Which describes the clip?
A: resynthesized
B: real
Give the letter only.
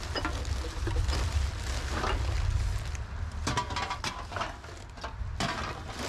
B